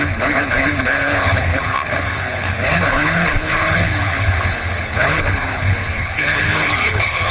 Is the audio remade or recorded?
remade